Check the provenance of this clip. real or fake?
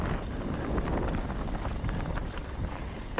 real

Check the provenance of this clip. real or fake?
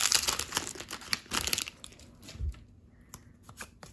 real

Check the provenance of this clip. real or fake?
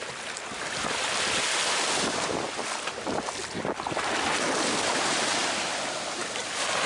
real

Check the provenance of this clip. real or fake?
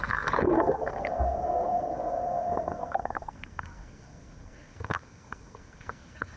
fake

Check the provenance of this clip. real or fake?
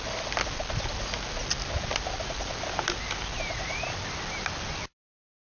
real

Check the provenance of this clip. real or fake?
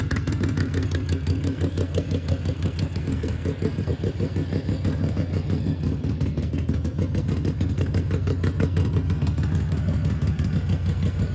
fake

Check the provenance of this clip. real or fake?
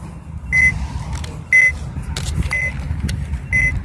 real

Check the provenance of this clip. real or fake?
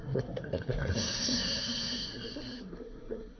fake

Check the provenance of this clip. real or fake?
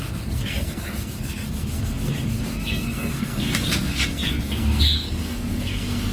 fake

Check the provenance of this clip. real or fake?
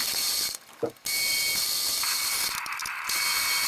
real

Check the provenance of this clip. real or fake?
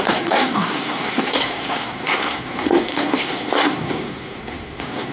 fake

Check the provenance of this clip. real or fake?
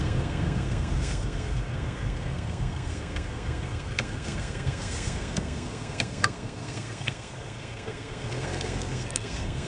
fake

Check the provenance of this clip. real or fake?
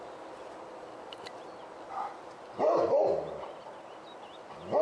real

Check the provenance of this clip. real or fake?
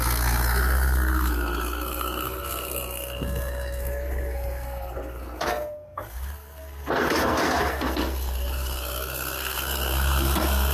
fake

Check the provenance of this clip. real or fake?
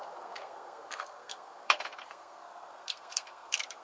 fake